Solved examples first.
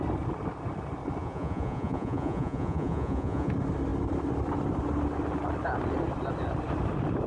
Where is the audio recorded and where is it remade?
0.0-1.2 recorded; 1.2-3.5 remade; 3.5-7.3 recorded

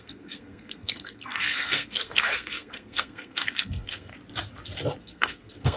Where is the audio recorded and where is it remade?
0.0-4.1 remade; 4.1-5.0 recorded; 5.0-5.8 remade

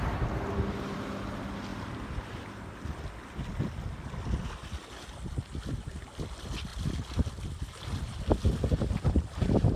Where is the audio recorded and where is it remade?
0.0-9.8 recorded

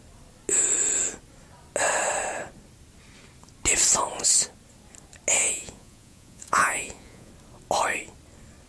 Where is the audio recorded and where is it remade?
0.0-5.4 recorded; 5.4-7.3 remade; 7.3-8.7 recorded